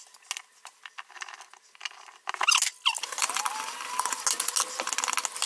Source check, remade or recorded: recorded